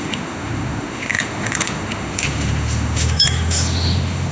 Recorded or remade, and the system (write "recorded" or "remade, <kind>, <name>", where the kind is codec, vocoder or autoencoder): remade, autoencoder, DAC-VAE